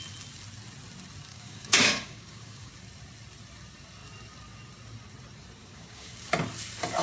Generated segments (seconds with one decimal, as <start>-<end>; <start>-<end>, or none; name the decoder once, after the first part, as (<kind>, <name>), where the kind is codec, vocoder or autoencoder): 1.3-2.7 (codec, DAC); 5.6-6.3